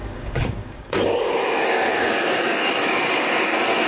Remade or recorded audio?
remade